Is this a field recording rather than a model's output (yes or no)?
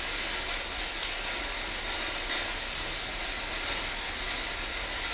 yes